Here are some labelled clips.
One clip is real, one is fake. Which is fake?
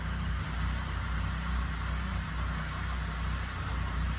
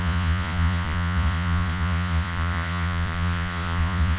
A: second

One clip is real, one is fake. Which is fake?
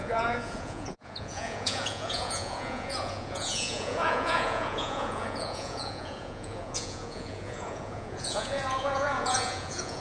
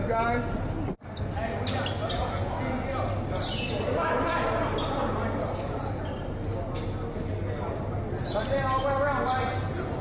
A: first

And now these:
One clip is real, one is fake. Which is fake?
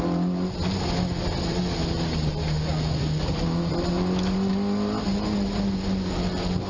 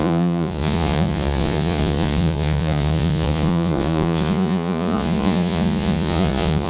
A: second